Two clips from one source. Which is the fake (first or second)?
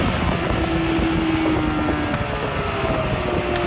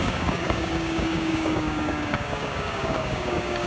second